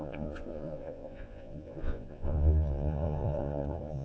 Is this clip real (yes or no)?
no